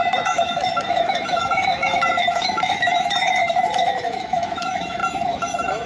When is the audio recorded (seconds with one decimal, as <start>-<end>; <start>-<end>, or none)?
none